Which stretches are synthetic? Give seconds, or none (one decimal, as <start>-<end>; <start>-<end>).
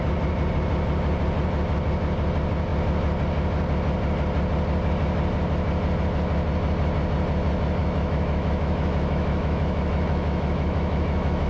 7.8-11.5